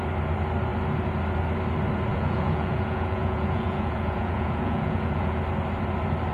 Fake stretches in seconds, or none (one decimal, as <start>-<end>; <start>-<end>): 2.1-5.4